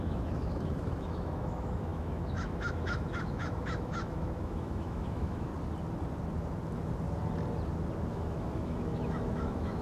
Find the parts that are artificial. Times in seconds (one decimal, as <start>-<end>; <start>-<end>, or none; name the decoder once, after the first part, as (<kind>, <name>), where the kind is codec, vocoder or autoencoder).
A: 0.0-5.5 (autoencoder, DAC-VAE); 8.1-9.8